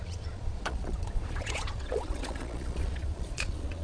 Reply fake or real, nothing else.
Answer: fake